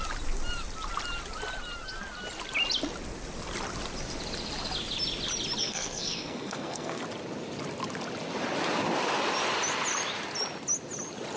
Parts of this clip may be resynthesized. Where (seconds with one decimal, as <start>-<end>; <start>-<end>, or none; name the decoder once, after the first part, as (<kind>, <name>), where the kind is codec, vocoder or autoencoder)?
5.6-7.0 (codec, SNAC)